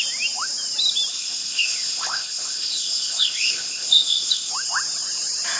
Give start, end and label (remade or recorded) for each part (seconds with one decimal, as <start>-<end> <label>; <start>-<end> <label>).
0.0-1.1 recorded; 1.1-4.5 remade; 4.5-5.6 recorded